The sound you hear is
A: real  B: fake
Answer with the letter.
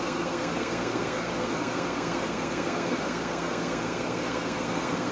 B